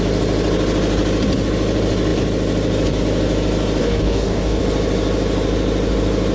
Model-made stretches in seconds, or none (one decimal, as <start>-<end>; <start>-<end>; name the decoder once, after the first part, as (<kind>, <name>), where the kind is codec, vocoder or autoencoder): 3.8-4.6 (codec, DAC)